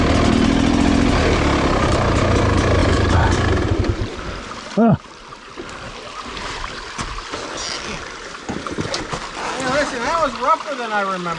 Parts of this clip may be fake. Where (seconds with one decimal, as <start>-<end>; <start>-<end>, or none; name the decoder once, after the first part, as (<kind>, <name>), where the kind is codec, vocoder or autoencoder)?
none